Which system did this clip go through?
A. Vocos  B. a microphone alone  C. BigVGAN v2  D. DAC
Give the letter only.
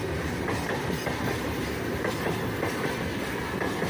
B